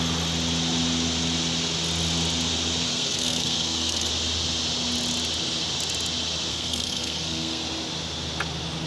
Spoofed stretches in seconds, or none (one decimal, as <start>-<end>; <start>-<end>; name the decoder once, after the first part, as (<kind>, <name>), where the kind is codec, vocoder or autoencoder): 2.9-4.1 (codec, SNAC); 6.5-7.6